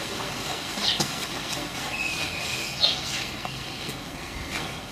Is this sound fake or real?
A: fake